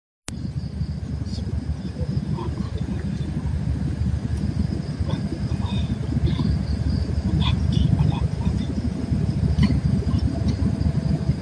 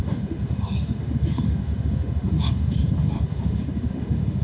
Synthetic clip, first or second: second